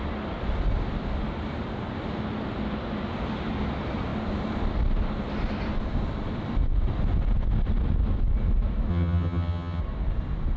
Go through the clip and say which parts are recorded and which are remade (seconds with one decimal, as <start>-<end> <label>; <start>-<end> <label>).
0.0-8.9 recorded; 8.9-9.8 remade; 9.8-10.6 recorded